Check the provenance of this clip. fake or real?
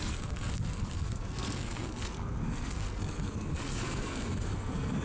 fake